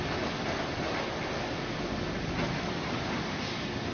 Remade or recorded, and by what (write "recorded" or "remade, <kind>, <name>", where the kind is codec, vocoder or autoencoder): recorded